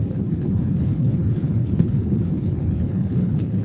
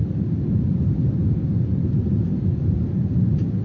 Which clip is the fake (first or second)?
first